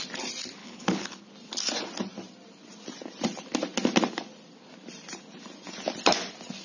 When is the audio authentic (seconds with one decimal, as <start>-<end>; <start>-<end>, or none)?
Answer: 0.0-0.6; 1.2-6.6